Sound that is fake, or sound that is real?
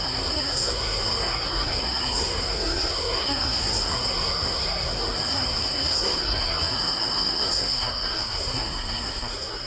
fake